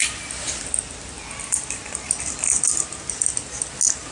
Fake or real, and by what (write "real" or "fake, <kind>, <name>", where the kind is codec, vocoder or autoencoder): real